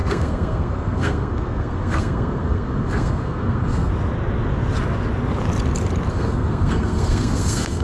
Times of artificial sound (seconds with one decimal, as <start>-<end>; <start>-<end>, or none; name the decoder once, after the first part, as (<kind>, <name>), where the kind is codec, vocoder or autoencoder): 0.0-3.9 (codec, SNAC); 6.1-7.8